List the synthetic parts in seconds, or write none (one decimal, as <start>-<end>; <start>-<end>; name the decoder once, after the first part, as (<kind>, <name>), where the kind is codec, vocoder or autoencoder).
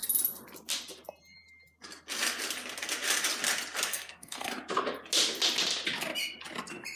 3.9-4.5 (codec, SNAC)